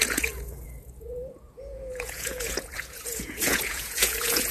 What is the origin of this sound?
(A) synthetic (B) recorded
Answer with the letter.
A